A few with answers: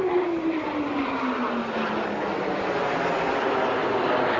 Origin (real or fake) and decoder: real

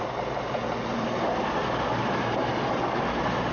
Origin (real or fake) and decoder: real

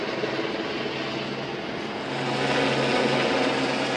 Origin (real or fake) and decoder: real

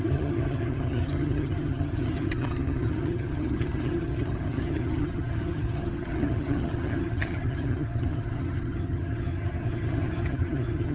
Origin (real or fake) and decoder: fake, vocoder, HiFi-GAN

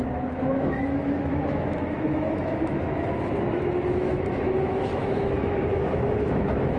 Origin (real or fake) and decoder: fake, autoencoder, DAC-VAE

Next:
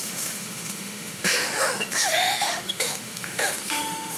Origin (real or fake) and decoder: fake, autoencoder, DAC-VAE